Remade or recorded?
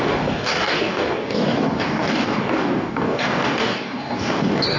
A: remade